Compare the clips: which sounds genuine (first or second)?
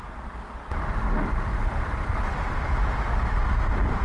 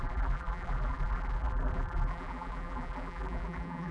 first